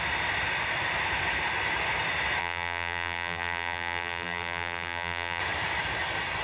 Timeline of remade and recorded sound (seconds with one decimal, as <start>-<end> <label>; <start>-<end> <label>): 0.0-2.4 recorded; 2.4-5.4 remade; 5.4-6.4 recorded